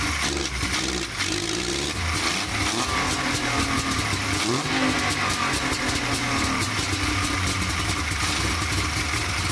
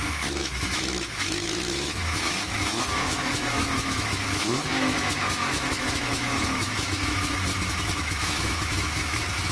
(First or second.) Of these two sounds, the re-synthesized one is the second